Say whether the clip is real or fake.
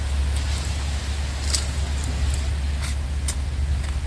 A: real